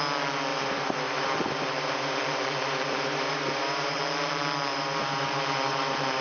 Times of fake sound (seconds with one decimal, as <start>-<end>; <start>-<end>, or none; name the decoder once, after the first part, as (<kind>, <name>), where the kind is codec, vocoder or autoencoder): 0.5-4.0 (vocoder, BigVGAN v2); 4.7-6.2